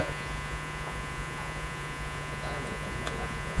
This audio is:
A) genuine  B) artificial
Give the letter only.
B